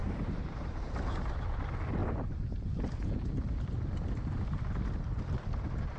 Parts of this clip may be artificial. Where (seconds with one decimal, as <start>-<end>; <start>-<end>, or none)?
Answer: 0.0-1.4; 2.0-2.7